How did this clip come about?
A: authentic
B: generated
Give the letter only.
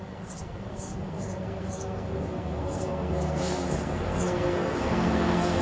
B